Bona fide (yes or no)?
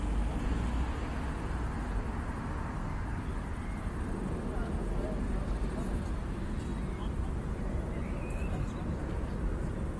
yes